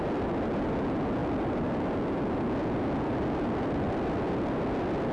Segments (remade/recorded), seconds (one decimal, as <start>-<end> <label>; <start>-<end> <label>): 0.0-5.1 recorded